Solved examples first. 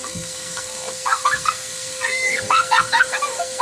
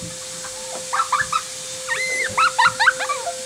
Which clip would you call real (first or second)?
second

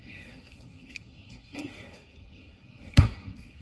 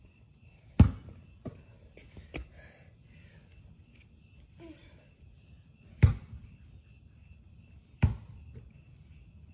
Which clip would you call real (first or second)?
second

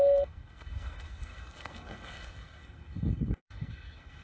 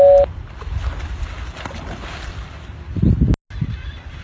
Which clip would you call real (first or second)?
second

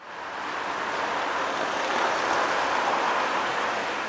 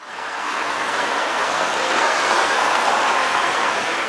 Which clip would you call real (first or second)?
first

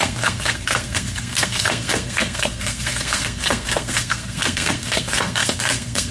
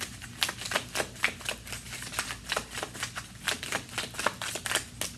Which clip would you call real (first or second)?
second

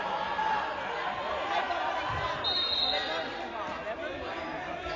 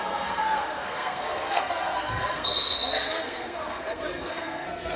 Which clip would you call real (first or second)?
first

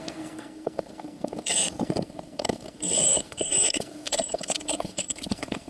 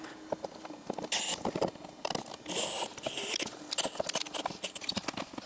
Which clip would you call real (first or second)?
second